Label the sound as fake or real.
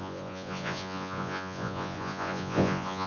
fake